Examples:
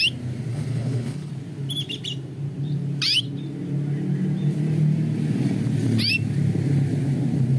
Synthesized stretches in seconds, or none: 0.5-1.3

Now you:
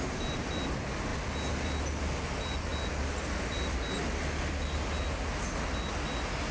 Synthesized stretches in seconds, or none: none